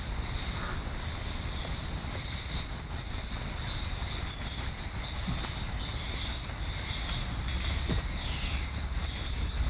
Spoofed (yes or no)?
no